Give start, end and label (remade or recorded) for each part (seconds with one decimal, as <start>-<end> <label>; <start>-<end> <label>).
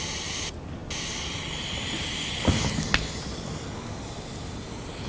0.0-5.1 recorded